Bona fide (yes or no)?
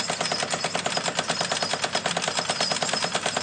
yes